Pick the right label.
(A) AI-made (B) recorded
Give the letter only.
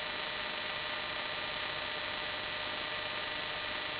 B